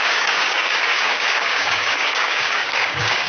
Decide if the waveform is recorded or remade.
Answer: remade